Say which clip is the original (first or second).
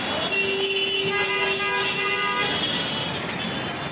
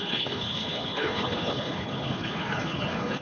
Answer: first